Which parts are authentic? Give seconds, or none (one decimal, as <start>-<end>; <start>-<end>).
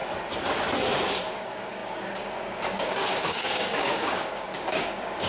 0.0-1.2